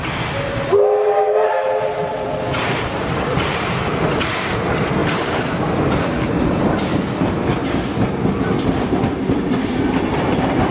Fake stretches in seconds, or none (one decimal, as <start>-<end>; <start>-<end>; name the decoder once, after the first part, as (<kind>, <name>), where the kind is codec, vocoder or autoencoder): 2.1-3.7 (vocoder, BigVGAN v2); 5.0-5.6